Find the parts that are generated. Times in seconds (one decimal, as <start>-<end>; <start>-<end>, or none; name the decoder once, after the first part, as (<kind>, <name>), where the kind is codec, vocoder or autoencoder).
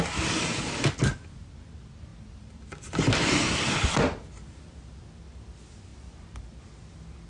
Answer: none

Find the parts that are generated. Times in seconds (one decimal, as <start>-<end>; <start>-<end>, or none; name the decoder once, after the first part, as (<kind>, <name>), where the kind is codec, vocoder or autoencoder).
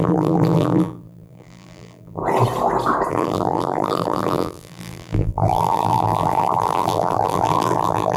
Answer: 0.0-2.2 (vocoder, BigVGAN v2); 3.1-8.2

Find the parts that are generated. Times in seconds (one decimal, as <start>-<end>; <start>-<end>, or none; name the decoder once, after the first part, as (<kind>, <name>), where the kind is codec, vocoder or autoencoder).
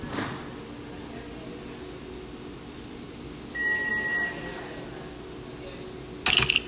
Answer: none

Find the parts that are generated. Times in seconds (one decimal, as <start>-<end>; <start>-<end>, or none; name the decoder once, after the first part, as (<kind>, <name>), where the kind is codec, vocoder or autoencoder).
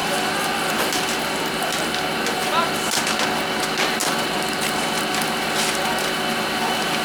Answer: 0.0-1.1 (vocoder, BigVGAN v2); 2.4-3.0; 4.0-5.0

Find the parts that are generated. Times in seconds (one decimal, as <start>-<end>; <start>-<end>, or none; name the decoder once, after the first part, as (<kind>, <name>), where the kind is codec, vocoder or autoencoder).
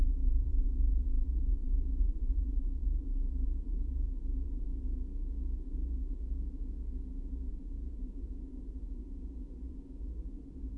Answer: 0.0-4.7 (vocoder, BigVGAN v2); 7.5-10.8